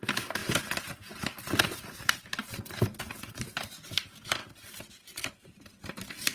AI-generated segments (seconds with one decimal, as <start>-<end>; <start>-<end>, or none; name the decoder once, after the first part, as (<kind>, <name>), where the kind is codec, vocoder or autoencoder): 0.0-4.4 (vocoder, BigVGAN v2); 5.4-6.3